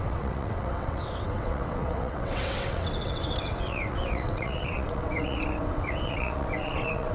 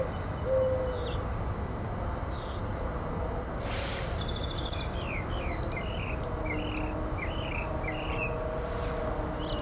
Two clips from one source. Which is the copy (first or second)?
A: first